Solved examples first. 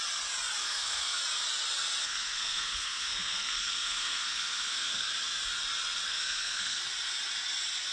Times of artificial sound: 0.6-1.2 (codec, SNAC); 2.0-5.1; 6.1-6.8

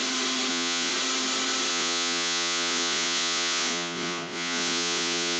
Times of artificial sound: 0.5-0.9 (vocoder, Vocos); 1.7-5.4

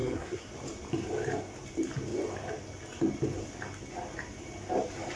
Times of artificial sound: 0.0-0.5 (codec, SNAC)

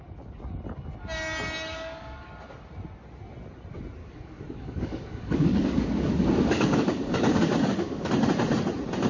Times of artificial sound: 1.7-2.3 (codec, DAC); 4.0-8.1